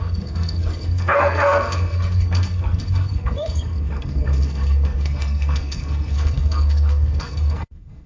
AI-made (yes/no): yes